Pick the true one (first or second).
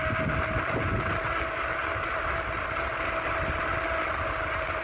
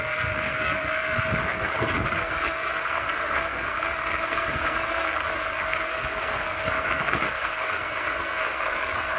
first